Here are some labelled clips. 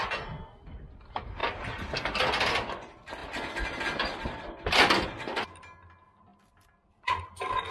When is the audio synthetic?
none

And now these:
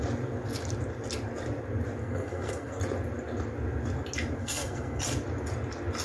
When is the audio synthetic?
2.0-2.8 (codec, SNAC); 4.4-5.0

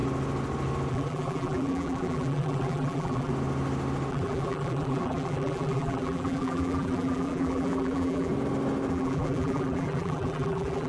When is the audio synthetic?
0.9-3.3 (vocoder, BigVGAN v2); 4.1-8.3; 8.9-10.9

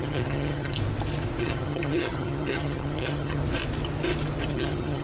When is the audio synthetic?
0.0-0.8 (vocoder, HiFi-GAN); 1.4-3.4; 4.5-5.0

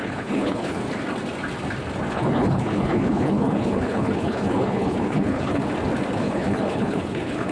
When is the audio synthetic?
0.0-0.8 (codec, HILCodec); 2.1-5.6; 6.2-7.5

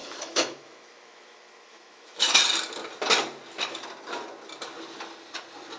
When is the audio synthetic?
0.0-2.4 (autoencoder, DAC-VAE)

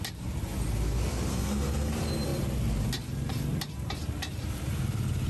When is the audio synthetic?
1.3-1.9 (codec, SNAC)

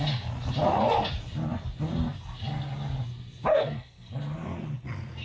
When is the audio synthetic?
3.5-4.1 (codec, SNAC)